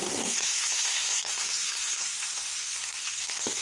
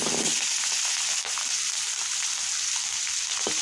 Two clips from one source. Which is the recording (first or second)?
second